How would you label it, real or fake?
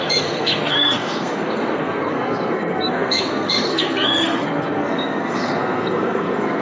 fake